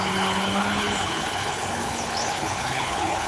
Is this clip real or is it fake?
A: fake